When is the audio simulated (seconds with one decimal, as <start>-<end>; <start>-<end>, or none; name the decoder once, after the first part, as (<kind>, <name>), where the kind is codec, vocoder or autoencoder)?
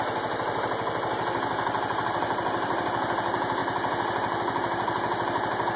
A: none